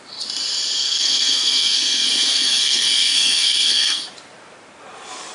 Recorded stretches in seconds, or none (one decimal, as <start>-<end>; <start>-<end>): 0.0-0.8; 4.0-5.3